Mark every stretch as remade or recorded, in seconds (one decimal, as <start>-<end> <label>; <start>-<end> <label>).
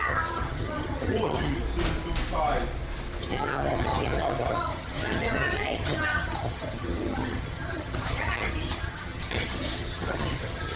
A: 0.0-1.6 remade; 1.6-3.2 recorded; 3.2-10.8 remade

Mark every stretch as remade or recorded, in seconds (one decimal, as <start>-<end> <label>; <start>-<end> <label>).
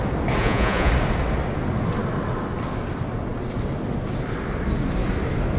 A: 0.0-0.4 recorded; 0.4-0.9 remade; 0.9-5.6 recorded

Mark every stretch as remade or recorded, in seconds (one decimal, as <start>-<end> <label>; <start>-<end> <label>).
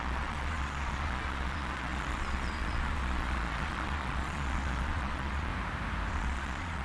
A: 0.0-5.5 remade; 5.5-6.1 recorded; 6.1-6.8 remade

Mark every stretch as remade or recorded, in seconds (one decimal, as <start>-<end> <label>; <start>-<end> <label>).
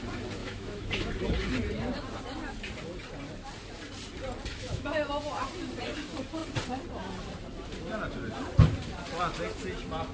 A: 0.0-0.4 recorded; 0.4-1.1 remade; 1.1-4.5 recorded; 4.5-5.1 remade; 5.1-10.1 recorded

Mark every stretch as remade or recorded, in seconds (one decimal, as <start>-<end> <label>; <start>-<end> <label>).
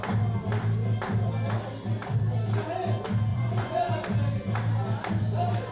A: 0.0-3.3 recorded; 3.3-3.9 remade; 3.9-5.7 recorded